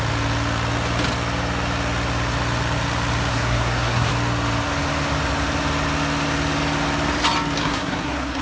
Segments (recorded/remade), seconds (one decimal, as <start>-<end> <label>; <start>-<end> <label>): 0.0-3.3 recorded; 3.3-4.1 remade; 4.1-7.6 recorded; 7.6-8.4 remade